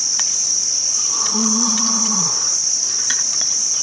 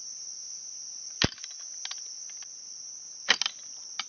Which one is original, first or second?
second